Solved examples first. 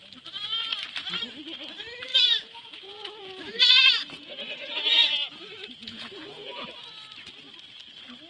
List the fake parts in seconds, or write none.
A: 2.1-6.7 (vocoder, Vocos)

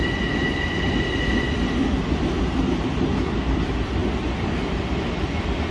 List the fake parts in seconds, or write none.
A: none

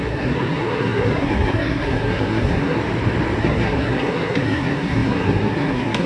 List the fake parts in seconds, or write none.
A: 0.0-2.8 (codec, SNAC); 3.4-6.1

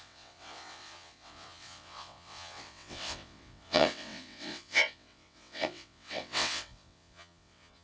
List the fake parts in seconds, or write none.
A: 0.0-7.8 (vocoder, WaveNeXt)

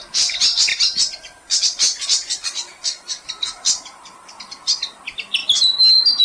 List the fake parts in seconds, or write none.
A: 0.7-4.4 (vocoder, BigVGAN v2)

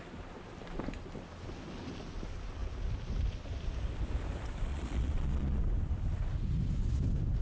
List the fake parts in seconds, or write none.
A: 4.7-5.6 (vocoder, Vocos)

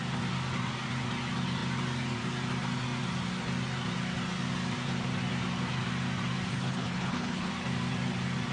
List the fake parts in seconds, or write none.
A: 6.5-7.5 (codec, HILCodec)